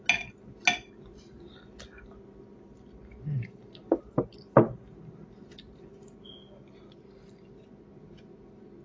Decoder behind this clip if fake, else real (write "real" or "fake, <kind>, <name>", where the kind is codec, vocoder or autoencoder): real